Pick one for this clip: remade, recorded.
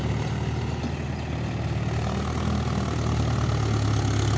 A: recorded